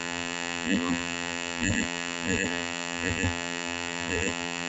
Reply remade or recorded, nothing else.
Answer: remade